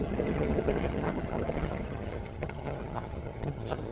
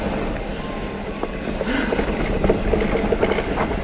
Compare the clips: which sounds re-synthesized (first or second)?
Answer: first